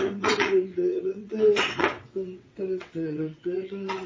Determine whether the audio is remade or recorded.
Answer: remade